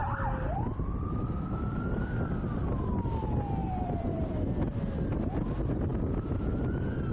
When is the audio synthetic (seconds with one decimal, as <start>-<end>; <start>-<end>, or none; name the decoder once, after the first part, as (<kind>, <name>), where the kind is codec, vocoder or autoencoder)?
3.6-4.3 (vocoder, BigVGAN v2)